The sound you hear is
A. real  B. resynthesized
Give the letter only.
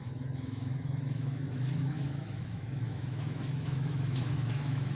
B